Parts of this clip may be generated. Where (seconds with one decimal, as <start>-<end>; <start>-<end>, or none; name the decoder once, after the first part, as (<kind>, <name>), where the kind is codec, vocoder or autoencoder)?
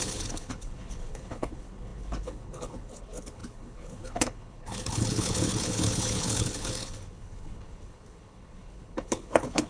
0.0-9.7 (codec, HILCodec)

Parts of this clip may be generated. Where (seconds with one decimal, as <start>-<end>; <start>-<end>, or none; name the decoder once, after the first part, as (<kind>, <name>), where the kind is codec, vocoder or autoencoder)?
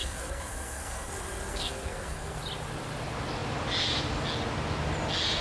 0.0-1.1 (codec, SNAC); 1.5-2.4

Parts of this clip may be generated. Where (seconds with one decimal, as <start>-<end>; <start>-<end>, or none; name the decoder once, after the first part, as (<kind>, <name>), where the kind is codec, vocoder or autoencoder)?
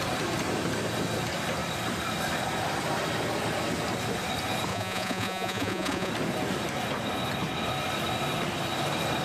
4.7-6.1 (vocoder, Vocos)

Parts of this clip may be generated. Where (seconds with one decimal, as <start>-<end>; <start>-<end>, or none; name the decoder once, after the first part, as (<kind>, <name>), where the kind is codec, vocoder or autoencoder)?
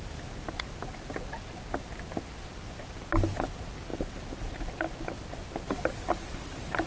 none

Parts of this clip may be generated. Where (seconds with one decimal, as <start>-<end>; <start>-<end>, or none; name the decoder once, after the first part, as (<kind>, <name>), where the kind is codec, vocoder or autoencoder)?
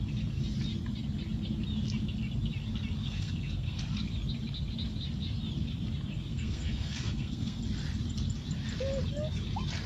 3.0-3.8 (codec, SNAC); 6.3-7.6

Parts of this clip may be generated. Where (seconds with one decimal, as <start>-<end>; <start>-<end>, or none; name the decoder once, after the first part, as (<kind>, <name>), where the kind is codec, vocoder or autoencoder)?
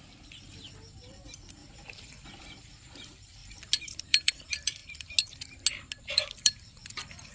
0.0-3.4 (vocoder, BigVGAN v2); 4.0-4.8; 6.0-7.3